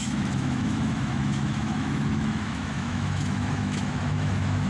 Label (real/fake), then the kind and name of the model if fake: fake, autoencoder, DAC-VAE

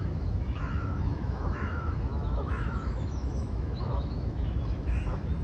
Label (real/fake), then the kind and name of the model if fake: fake, autoencoder, DAC-VAE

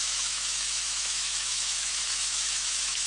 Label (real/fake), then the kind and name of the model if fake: fake, autoencoder, DAC-VAE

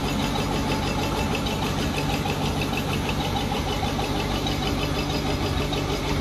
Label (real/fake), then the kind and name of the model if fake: real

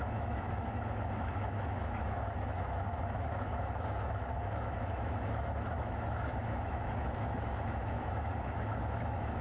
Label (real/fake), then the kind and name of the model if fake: fake, autoencoder, DAC-VAE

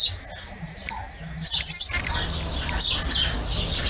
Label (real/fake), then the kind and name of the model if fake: real